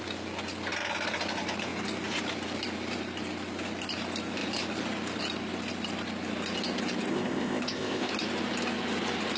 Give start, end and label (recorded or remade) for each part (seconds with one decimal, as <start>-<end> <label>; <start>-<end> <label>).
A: 0.0-7.1 recorded; 7.1-8.1 remade; 8.1-9.4 recorded